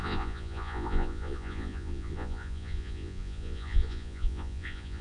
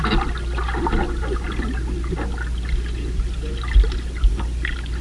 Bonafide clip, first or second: second